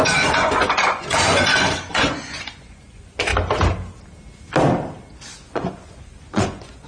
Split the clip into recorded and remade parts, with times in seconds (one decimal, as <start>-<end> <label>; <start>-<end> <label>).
0.0-3.3 remade; 3.3-5.3 recorded; 5.3-6.9 remade